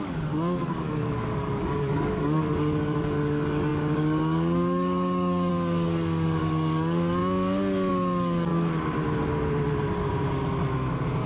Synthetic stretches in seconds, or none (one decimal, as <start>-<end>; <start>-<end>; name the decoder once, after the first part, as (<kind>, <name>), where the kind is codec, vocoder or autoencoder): 0.0-7.2 (codec, DAC); 7.9-8.5